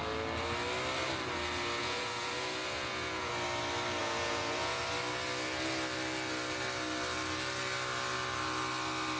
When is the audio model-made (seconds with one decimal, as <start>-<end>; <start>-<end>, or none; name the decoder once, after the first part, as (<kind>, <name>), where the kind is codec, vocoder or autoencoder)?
1.8-3.3 (vocoder, Vocos); 4.0-4.8